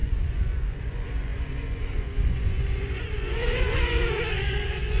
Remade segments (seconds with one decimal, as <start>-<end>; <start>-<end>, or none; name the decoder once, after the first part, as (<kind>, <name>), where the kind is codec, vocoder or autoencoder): 0.0-5.0 (vocoder, Vocos)